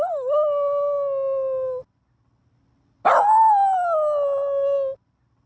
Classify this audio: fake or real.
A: real